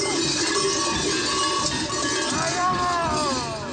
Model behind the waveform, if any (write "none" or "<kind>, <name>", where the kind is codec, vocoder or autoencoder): none